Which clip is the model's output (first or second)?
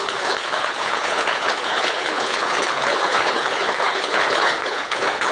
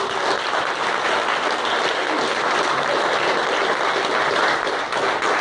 first